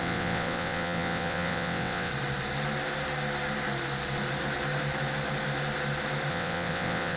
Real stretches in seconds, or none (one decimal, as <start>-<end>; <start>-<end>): 2.1-6.3